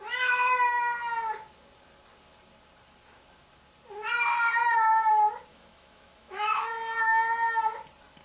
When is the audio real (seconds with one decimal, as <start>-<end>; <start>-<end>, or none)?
0.0-5.5; 6.7-8.2